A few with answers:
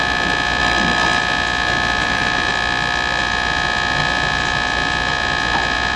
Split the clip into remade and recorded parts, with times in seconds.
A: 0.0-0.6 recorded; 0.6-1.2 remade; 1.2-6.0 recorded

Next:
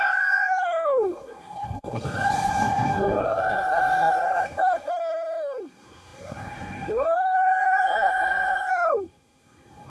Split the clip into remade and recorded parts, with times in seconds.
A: 0.0-9.9 remade

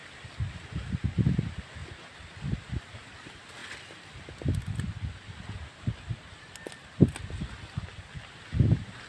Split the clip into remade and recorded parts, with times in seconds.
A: 0.0-9.1 recorded

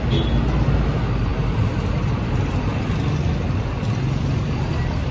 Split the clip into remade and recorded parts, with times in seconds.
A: 0.0-5.1 recorded

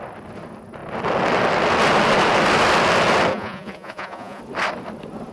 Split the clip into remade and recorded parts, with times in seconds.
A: 0.0-3.3 recorded; 3.3-4.4 remade; 4.4-5.3 recorded

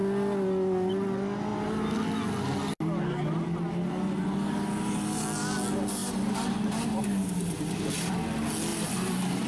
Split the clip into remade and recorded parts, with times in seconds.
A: 0.0-6.0 recorded; 6.0-8.1 remade; 8.1-8.7 recorded; 8.7-9.5 remade